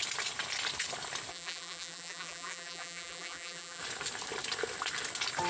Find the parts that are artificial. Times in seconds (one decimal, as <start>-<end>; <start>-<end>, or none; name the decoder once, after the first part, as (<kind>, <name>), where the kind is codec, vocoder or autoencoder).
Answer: 1.3-3.8 (vocoder, BigVGAN v2)